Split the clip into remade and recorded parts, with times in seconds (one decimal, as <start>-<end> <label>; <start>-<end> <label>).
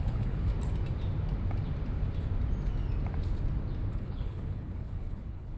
0.0-0.5 remade; 0.5-3.9 recorded; 3.9-5.6 remade